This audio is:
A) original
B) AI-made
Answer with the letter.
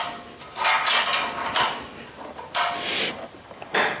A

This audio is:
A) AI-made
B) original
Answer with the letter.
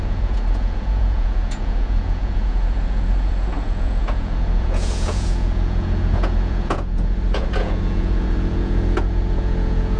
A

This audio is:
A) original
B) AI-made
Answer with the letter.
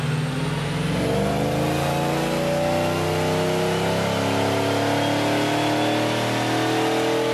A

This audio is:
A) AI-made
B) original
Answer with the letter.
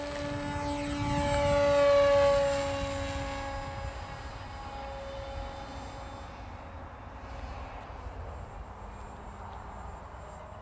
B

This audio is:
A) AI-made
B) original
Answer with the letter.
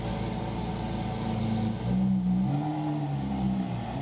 B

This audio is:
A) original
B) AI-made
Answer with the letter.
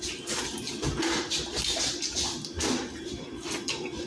A